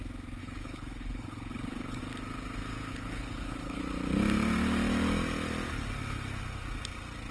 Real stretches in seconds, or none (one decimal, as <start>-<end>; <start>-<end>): 0.0-0.4; 2.0-2.9; 3.8-7.3